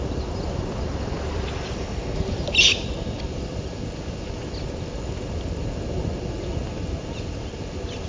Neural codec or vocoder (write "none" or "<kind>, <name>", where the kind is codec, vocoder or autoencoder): none